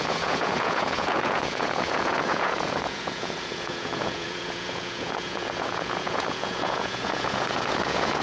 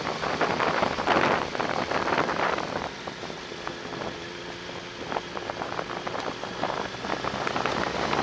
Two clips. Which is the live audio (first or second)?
second